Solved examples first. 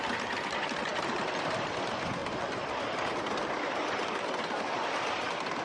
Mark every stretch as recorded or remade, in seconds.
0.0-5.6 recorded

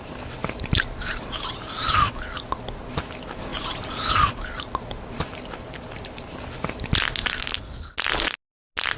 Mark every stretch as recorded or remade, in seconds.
0.0-0.4 recorded; 0.4-2.1 remade; 2.1-3.5 recorded; 3.5-6.4 remade; 6.4-9.0 recorded

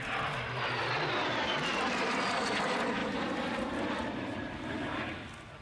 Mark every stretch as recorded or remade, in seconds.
0.0-3.0 recorded; 3.0-4.7 remade; 4.7-5.6 recorded

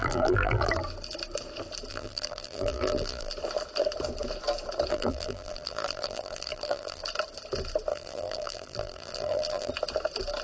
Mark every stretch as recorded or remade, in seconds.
0.0-0.7 remade; 0.7-1.9 recorded; 1.9-3.3 remade; 3.3-4.9 recorded; 4.9-7.0 remade; 7.0-7.9 recorded; 7.9-9.7 remade; 9.7-10.4 recorded

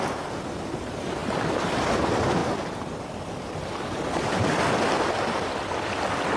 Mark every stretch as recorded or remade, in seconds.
0.0-6.4 recorded

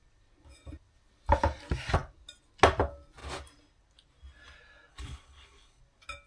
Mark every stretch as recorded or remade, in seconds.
0.0-4.9 recorded; 4.9-5.8 remade; 5.8-6.3 recorded

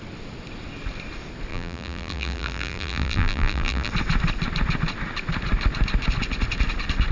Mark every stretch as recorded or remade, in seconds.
0.0-1.5 recorded; 1.5-3.9 remade; 3.9-7.1 recorded